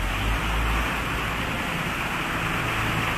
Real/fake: real